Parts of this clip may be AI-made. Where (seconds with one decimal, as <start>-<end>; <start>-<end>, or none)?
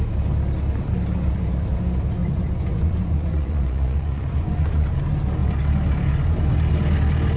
2.2-5.0